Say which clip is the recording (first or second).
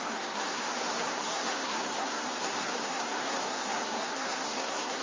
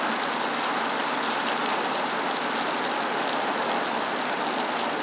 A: second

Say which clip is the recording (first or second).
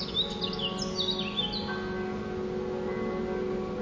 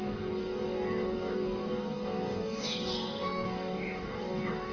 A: first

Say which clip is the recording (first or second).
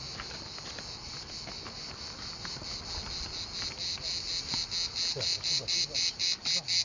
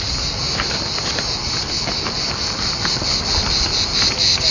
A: first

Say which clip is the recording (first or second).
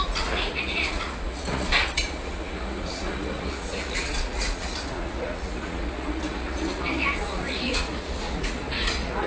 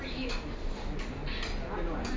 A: second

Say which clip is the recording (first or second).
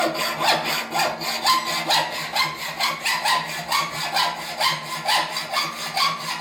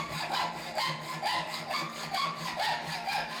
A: first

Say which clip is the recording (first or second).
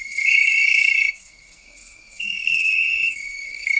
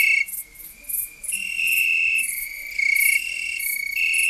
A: second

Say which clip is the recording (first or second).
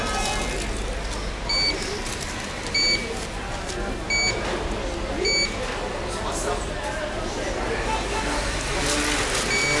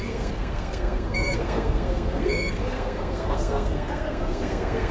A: first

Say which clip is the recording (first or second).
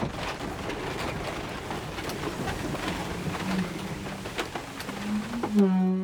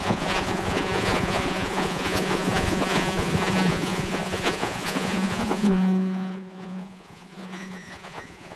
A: first